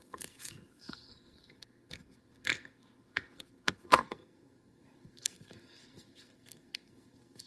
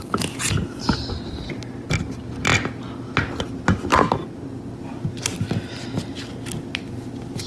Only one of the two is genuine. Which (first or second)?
second